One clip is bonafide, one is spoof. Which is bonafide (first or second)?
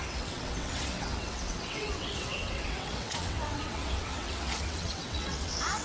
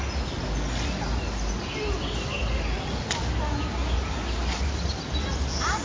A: second